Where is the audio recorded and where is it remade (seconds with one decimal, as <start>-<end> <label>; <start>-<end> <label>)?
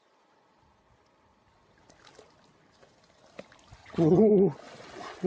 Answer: 0.0-3.8 recorded; 3.8-4.3 remade; 4.3-5.3 recorded